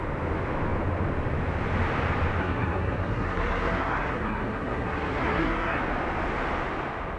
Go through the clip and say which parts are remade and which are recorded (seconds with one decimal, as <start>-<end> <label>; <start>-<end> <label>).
0.0-2.4 recorded; 2.4-5.8 remade; 5.8-7.2 recorded

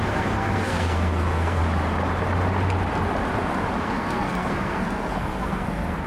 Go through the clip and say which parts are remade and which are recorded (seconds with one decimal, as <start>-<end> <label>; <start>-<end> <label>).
0.0-1.6 remade; 1.6-3.8 recorded; 3.8-6.1 remade

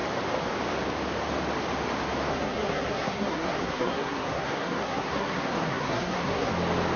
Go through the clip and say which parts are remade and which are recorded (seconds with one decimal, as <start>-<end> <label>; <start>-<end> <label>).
0.0-2.3 recorded; 2.3-6.5 remade; 6.5-7.0 recorded

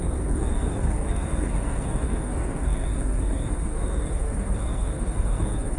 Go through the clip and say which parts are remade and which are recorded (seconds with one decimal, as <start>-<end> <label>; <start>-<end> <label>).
0.0-5.8 remade